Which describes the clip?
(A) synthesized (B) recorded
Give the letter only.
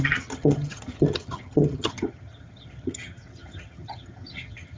A